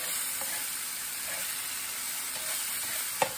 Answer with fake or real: real